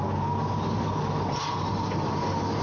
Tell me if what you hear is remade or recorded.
recorded